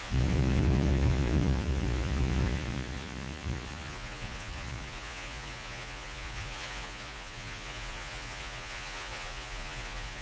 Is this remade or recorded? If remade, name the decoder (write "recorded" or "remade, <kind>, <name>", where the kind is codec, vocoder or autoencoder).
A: remade, vocoder, Vocos